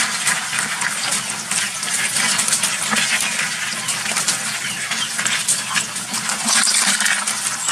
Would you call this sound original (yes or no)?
yes